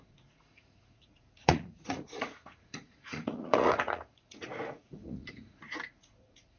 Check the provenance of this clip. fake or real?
fake